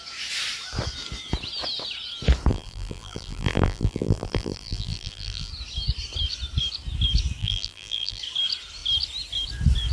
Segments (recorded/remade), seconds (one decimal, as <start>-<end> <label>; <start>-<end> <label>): 0.0-2.5 recorded; 2.5-5.5 remade; 5.5-7.4 recorded; 7.4-8.2 remade; 8.2-9.9 recorded